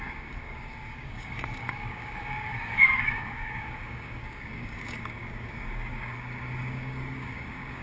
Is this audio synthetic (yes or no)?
yes